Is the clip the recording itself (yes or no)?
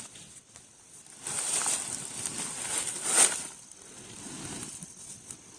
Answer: yes